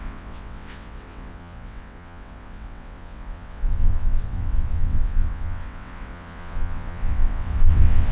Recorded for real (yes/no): no